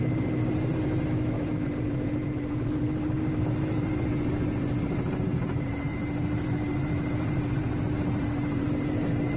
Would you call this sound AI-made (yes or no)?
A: yes